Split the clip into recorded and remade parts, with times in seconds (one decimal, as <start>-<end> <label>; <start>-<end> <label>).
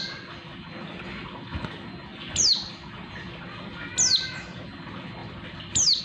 0.0-5.2 recorded; 5.2-6.0 remade